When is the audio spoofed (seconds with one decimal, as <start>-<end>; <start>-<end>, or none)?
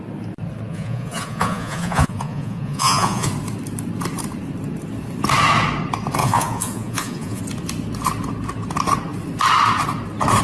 0.7-3.3; 6.2-7.4